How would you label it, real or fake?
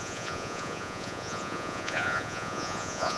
fake